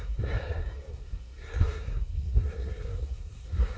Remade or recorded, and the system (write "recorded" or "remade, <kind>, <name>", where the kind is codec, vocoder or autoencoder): remade, codec, SNAC